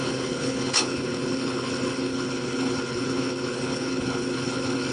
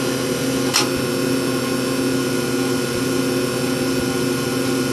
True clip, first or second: second